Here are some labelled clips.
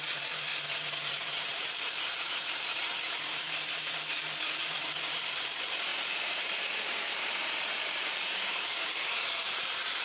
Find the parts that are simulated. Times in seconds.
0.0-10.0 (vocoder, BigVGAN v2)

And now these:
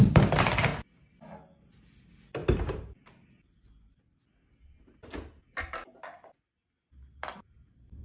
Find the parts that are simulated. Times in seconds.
0.0-0.7 (vocoder, BigVGAN v2); 1.6-2.4; 6.8-8.0